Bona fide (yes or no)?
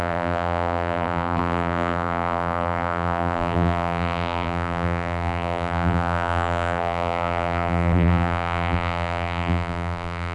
no